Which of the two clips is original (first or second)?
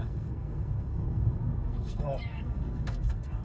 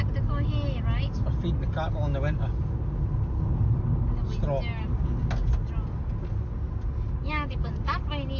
second